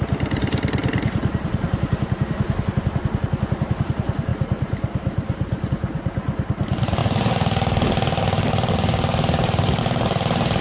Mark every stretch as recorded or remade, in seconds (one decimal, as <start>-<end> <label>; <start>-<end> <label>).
0.0-0.8 recorded; 0.8-2.7 remade; 2.7-10.6 recorded